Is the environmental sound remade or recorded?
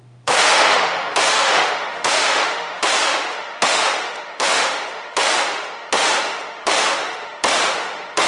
remade